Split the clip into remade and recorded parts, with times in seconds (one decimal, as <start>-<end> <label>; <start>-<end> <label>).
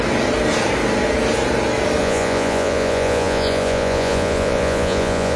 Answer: 0.0-2.0 recorded; 2.0-5.4 remade